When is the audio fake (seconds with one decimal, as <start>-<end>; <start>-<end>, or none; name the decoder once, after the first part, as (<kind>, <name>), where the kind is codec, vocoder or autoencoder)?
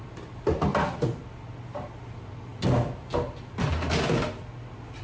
none